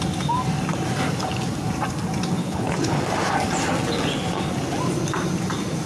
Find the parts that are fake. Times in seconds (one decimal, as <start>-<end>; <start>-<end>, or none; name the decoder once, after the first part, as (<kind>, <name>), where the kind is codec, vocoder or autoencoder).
2.4-3.0 (codec, HILCodec)